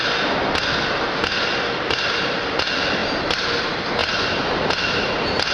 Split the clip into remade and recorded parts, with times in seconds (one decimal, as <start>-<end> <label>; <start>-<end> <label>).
0.0-5.5 recorded